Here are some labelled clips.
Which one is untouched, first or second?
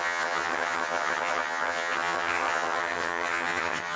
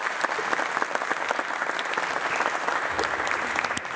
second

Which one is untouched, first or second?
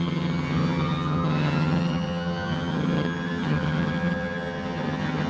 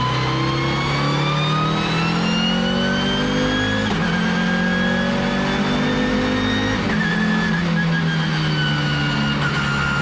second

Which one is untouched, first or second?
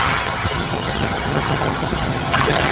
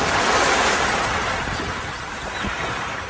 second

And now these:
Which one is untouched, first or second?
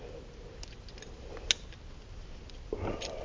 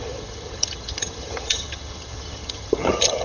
first